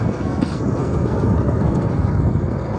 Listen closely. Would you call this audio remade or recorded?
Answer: remade